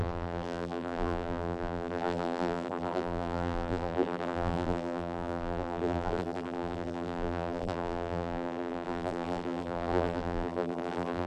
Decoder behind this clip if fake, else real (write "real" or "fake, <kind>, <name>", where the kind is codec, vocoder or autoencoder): fake, vocoder, BigVGAN v2